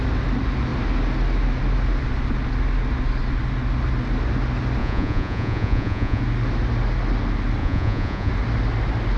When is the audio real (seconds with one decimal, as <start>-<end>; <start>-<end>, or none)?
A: 0.0-4.8; 6.2-7.6; 8.3-9.2